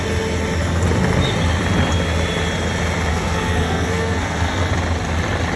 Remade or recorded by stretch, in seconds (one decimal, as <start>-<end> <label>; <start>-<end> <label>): 0.0-3.1 recorded; 3.1-4.7 remade; 4.7-5.6 recorded